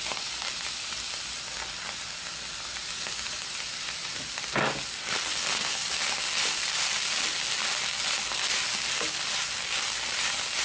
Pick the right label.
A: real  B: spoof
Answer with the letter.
A